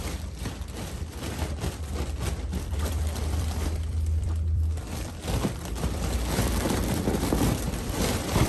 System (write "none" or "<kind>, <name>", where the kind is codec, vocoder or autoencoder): vocoder, BigVGAN v2